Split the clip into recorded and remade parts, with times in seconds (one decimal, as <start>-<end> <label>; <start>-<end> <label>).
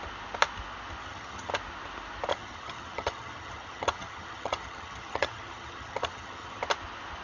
0.0-1.0 recorded; 1.0-1.5 remade; 1.5-2.3 recorded; 2.3-6.6 remade; 6.6-7.2 recorded